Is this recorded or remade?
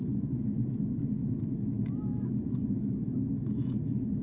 remade